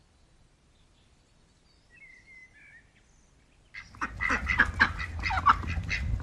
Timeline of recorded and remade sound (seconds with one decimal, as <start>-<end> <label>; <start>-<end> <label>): 0.0-6.2 recorded